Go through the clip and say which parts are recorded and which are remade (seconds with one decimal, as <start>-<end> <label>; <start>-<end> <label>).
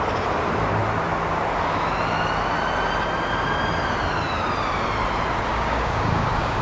0.0-5.5 recorded; 5.5-6.6 remade